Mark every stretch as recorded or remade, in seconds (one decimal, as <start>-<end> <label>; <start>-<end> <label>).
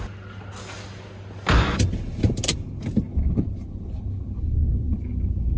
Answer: 0.0-5.6 recorded